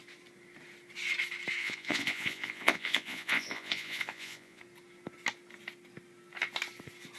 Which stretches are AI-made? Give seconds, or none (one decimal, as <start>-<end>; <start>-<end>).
1.6-4.6